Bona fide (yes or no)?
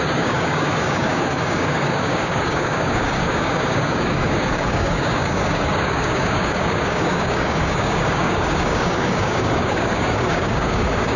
no